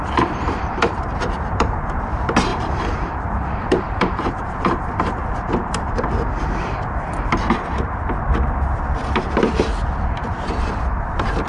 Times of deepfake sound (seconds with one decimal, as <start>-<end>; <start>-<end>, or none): 0.0-5.2; 10.3-11.5